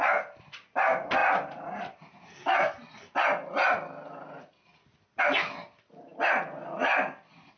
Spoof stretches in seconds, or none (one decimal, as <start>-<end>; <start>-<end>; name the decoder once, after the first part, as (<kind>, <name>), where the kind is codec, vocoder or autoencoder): none